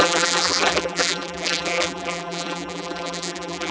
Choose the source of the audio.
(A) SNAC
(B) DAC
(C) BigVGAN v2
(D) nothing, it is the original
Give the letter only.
C